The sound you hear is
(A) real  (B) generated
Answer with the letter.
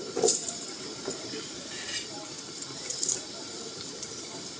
B